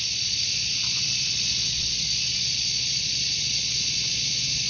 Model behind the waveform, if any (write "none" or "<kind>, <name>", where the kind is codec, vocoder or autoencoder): vocoder, Vocos